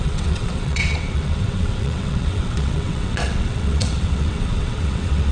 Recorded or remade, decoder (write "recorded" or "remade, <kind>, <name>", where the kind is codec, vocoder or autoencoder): remade, vocoder, WaveNeXt